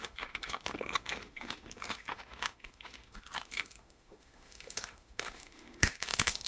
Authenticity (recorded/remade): remade